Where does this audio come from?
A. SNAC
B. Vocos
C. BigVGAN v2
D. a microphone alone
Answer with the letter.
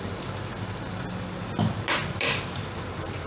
D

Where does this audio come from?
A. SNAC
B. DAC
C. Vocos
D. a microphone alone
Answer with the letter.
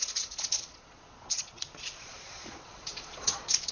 C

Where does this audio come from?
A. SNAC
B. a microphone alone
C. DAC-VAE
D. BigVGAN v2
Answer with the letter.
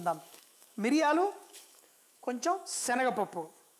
C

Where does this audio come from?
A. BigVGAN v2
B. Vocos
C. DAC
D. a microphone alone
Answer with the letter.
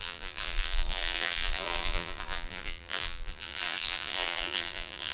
A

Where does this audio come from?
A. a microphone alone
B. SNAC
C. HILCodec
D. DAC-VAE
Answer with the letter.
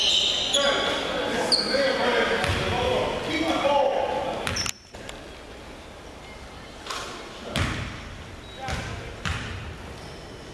A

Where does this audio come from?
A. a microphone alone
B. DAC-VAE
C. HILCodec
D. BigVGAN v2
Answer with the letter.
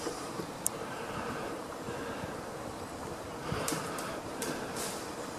D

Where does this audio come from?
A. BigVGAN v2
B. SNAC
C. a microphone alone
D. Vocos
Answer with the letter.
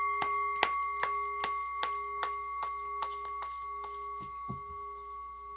C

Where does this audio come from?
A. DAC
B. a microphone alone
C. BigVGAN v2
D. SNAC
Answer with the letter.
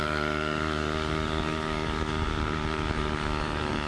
A